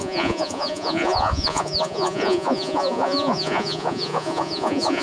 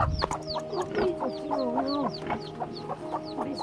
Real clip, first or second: second